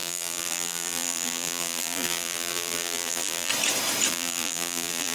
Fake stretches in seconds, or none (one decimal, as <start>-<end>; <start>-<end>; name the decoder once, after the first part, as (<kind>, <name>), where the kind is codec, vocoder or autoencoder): 0.0-3.5 (vocoder, BigVGAN v2); 4.1-5.1